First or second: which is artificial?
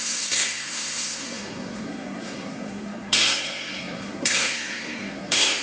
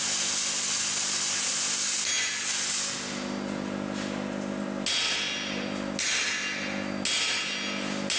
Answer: first